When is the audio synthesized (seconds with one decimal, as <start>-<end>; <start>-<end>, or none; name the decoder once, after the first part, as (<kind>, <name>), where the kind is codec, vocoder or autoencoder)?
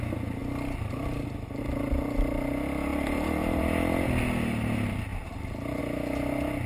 2.9-3.6 (vocoder, BigVGAN v2)